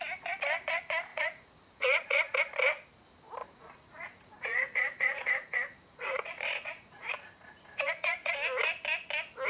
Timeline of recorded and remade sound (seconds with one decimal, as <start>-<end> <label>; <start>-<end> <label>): 0.0-1.1 recorded; 1.1-2.4 remade; 2.4-3.4 recorded; 3.4-8.3 remade; 8.3-9.5 recorded